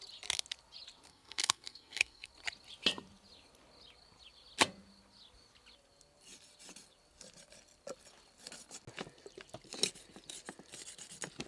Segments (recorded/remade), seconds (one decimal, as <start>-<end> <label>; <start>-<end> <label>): 0.0-1.1 recorded; 1.1-2.3 remade; 2.3-11.5 recorded